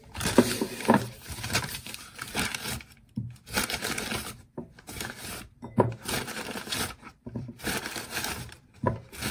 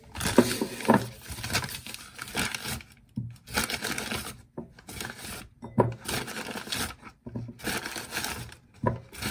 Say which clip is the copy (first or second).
first